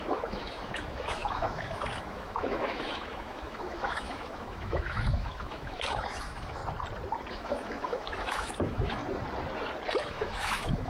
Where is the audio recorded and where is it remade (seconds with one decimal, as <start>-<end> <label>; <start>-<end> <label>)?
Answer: 0.0-6.6 remade; 6.6-7.3 recorded; 7.3-9.0 remade; 9.0-10.0 recorded; 10.0-10.9 remade